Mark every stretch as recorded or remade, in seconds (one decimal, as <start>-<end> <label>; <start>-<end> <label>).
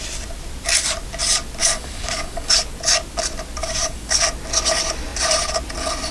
0.0-1.6 recorded; 1.6-2.6 remade; 2.6-3.6 recorded; 3.6-4.2 remade; 4.2-6.1 recorded